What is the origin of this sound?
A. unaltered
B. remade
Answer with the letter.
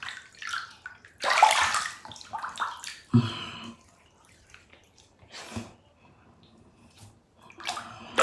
A